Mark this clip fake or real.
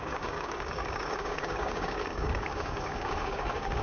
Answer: fake